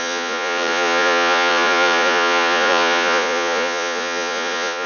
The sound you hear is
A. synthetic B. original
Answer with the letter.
A